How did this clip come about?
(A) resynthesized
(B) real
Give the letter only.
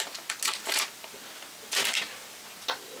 B